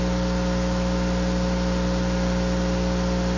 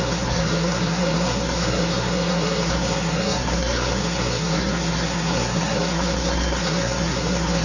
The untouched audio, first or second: first